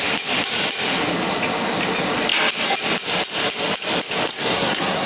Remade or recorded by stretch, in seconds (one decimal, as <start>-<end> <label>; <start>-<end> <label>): 0.0-4.3 recorded; 4.3-5.1 remade